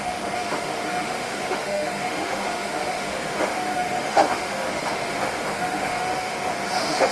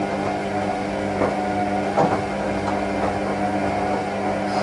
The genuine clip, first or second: second